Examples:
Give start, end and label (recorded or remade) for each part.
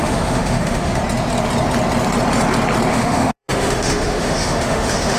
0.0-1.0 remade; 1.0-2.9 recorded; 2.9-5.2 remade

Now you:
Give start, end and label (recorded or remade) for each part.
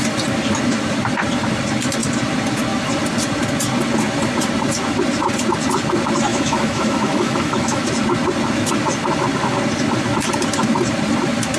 0.0-6.3 recorded; 6.3-7.8 remade; 7.8-11.6 recorded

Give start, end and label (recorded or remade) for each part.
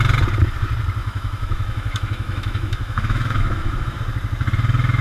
0.0-1.0 recorded; 1.0-4.0 remade; 4.0-5.0 recorded